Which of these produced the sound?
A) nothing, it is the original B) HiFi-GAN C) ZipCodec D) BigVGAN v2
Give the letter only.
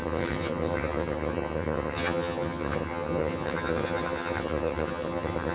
B